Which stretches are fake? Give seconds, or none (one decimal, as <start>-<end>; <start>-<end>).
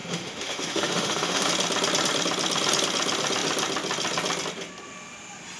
0.0-1.5